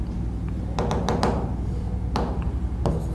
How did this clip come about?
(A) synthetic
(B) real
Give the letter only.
B